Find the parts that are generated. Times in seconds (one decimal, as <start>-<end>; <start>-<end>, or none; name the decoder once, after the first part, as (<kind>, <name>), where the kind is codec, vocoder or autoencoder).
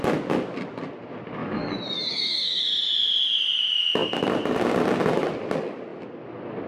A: 1.4-2.6 (autoencoder, DAC-VAE)